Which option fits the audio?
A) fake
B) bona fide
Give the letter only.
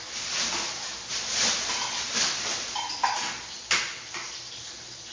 B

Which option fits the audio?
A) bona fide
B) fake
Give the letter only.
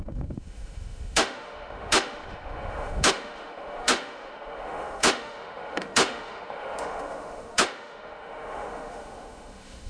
B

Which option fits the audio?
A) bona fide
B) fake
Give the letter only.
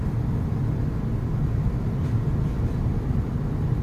A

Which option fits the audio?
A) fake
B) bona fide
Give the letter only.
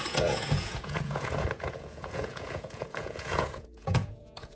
A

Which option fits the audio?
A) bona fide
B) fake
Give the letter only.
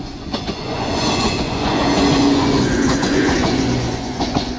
B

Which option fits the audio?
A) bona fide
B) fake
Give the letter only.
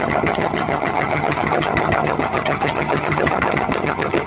B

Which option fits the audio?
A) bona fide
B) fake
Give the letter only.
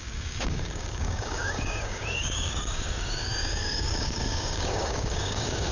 B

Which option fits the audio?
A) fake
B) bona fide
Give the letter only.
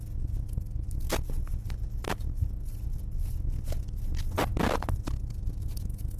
B